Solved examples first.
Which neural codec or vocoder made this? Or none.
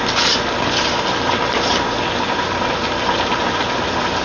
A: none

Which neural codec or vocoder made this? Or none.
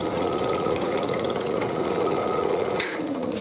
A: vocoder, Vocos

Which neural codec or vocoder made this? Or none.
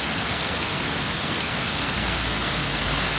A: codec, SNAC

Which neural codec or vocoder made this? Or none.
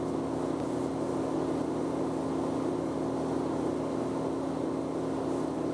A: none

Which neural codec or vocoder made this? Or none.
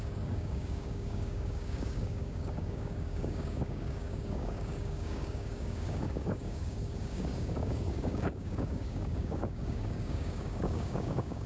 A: codec, DAC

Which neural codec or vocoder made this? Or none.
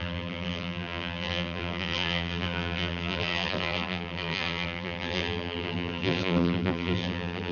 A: vocoder, BigVGAN v2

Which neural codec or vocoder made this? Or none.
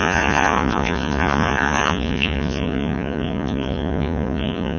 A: vocoder, Vocos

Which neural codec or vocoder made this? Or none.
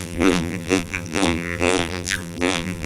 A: vocoder, BigVGAN v2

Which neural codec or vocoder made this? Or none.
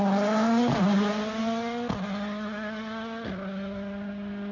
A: none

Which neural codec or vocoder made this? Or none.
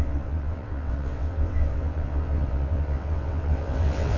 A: vocoder, WaveNeXt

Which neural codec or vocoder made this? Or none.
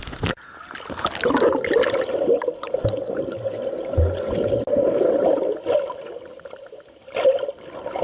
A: none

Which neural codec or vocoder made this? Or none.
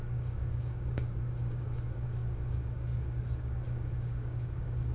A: codec, DAC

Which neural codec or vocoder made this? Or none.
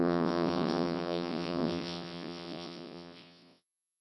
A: vocoder, WaveNeXt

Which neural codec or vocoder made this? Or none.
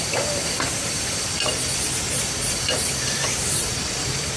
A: vocoder, BigVGAN v2